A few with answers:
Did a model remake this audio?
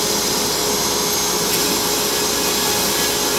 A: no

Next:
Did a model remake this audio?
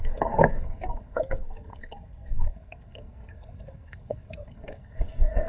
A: yes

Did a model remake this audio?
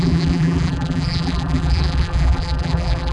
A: yes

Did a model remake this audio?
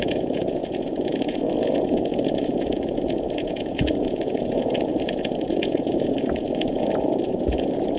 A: yes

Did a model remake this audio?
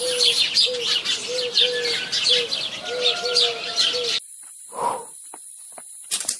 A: no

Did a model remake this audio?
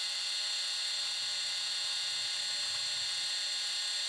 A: no